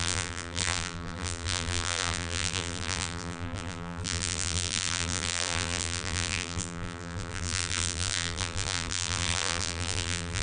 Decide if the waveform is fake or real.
fake